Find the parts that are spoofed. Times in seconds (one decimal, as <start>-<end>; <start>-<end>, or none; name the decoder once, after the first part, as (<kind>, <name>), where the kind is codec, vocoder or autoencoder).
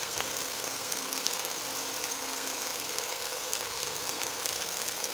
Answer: 0.0-1.6 (codec, SNAC); 2.1-5.1